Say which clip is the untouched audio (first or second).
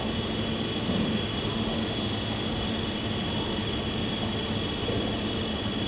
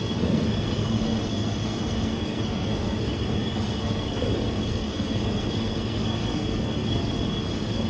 first